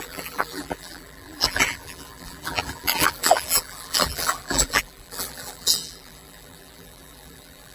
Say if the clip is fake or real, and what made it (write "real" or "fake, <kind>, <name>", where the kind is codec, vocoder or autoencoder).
fake, vocoder, BigVGAN v2